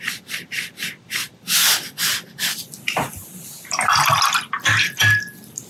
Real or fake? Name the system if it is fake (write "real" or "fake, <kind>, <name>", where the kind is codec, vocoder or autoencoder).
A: fake, vocoder, BigVGAN v2